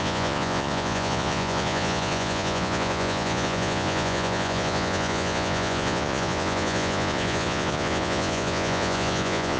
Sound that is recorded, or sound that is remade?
remade